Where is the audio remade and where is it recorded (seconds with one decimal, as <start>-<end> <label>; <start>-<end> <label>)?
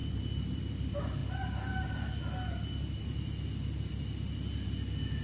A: 0.0-5.2 recorded